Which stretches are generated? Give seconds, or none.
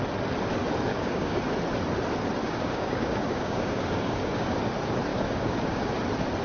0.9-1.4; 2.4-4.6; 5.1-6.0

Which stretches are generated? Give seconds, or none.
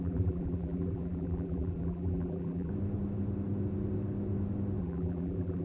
0.0-2.7; 4.8-5.6